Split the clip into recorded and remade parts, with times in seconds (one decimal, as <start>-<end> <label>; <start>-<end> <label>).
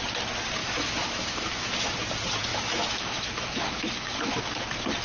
0.0-0.6 recorded; 0.6-1.9 remade; 1.9-2.5 recorded; 2.5-4.4 remade; 4.4-5.0 recorded